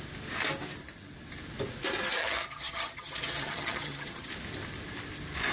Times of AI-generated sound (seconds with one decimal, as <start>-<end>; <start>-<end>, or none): 2.2-4.3